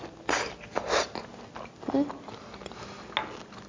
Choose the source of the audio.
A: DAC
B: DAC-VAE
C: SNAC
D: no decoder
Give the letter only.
D